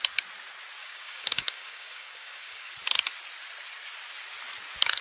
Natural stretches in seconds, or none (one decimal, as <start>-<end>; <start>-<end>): 0.0-0.8; 2.7-5.0